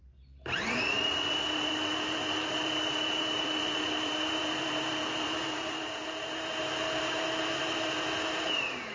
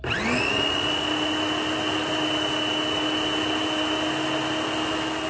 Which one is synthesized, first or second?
first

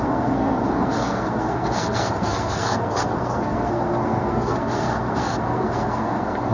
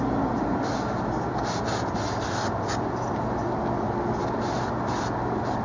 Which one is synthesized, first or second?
first